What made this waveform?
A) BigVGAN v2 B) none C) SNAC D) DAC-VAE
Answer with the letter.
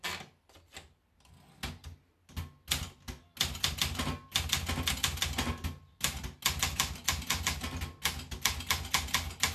B